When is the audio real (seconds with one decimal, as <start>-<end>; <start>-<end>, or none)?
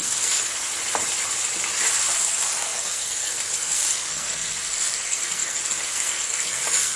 0.7-1.9